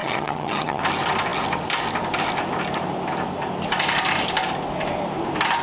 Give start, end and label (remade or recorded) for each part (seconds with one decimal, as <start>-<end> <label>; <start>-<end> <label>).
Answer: 0.0-0.8 remade; 0.8-5.6 recorded